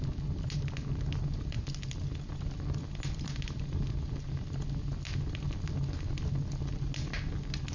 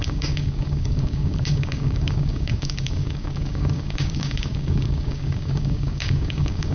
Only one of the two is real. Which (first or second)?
first